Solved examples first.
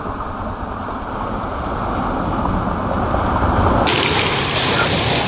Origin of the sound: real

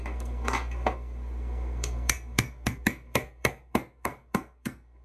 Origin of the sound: fake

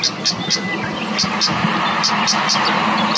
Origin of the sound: real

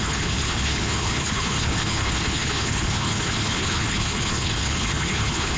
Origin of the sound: fake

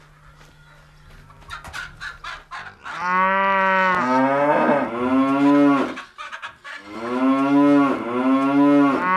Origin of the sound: real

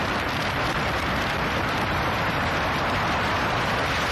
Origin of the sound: fake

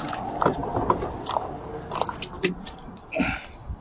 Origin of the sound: real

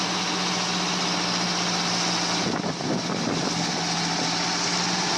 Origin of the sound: real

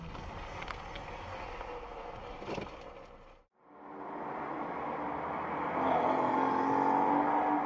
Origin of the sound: real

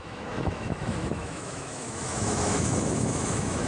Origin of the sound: fake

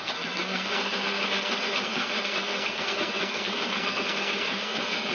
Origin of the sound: fake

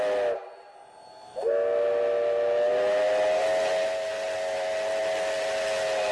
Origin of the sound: real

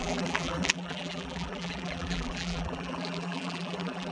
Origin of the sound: fake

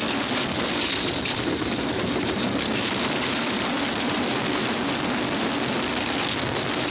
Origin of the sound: fake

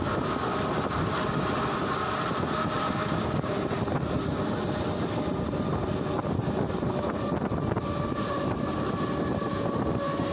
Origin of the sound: real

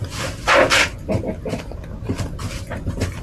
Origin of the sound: real